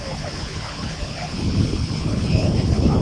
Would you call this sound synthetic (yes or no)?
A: yes